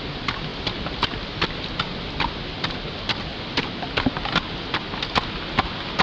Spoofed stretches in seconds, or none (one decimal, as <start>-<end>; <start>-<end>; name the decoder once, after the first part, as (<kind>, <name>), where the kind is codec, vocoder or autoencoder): none